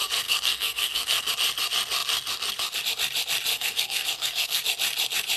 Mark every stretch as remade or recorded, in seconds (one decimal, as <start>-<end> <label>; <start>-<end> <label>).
0.0-1.3 remade; 1.3-3.5 recorded; 3.5-4.6 remade; 4.6-5.4 recorded